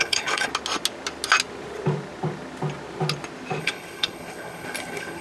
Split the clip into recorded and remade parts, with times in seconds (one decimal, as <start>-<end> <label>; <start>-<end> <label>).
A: 0.0-0.5 remade; 0.5-3.6 recorded; 3.6-5.2 remade